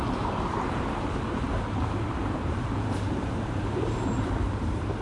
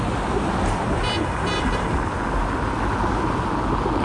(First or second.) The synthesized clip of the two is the first